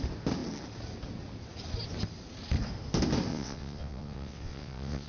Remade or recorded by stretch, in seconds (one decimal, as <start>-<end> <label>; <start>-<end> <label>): 0.0-3.3 recorded; 3.3-5.1 remade